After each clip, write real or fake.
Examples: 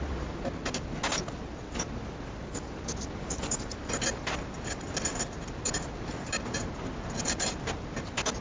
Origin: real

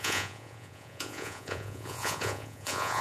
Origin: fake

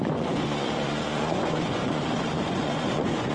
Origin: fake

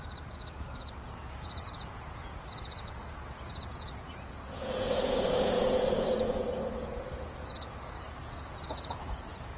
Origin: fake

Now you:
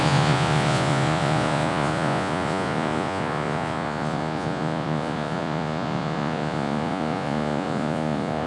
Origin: fake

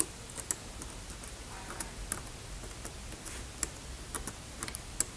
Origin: real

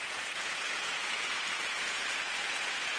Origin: fake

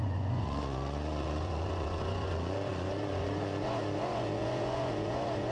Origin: fake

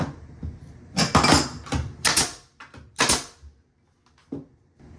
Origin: real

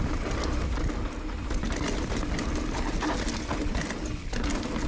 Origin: real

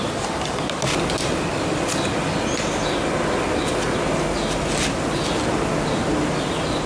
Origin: real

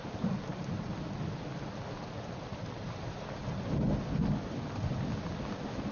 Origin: real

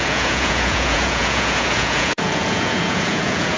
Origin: fake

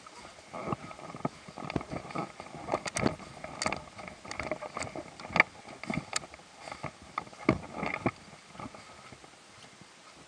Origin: real